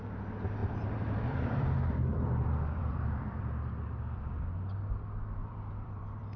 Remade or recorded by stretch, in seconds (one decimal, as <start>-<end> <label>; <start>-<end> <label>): 0.0-0.6 recorded; 0.6-4.4 remade; 4.4-5.4 recorded; 5.4-6.4 remade